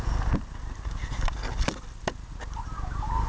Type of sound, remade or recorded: recorded